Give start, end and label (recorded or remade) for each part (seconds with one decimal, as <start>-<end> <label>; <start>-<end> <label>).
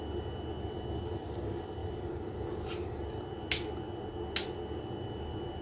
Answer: 0.0-5.6 recorded